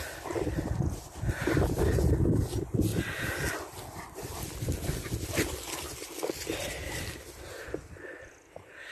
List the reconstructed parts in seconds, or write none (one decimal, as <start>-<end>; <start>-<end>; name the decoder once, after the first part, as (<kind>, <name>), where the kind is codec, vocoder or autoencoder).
none

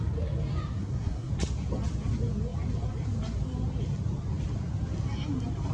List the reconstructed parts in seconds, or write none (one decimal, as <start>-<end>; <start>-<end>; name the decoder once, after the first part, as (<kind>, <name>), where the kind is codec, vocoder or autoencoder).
0.8-1.3 (codec, SNAC)

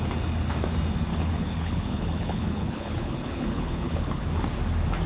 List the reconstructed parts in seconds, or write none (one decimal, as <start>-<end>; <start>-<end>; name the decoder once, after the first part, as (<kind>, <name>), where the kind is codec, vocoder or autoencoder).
1.1-4.2 (codec, HILCodec)

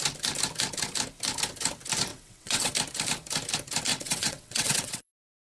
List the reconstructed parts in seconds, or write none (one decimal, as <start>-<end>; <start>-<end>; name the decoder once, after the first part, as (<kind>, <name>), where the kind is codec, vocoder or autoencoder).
2.1-2.7 (vocoder, WaveNeXt); 3.9-5.1

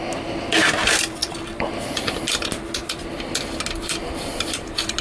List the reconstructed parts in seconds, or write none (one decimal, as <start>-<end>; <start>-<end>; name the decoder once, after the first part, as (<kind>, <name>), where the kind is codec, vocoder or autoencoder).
none

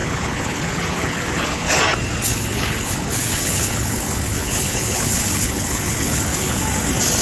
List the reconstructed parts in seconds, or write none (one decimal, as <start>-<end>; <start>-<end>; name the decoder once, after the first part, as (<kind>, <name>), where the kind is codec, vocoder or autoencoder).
0.0-1.8 (codec, HILCodec); 2.3-6.6

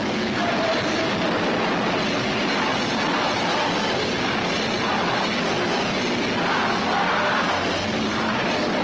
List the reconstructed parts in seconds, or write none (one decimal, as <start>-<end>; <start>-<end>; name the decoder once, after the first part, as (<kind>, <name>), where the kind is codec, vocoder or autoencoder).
none

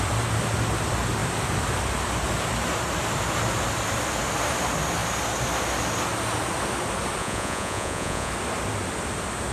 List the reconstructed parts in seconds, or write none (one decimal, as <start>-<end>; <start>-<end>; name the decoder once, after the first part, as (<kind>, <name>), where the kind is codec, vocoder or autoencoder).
7.2-8.3 (vocoder, Vocos)